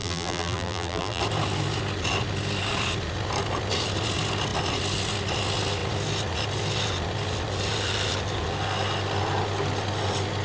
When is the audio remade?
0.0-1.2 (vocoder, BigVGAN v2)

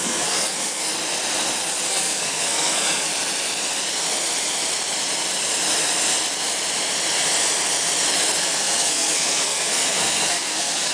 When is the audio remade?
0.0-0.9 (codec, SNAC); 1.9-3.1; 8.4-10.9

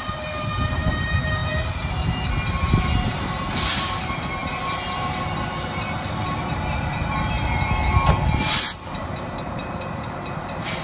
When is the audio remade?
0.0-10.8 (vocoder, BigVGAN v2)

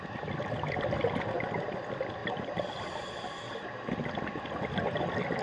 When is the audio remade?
none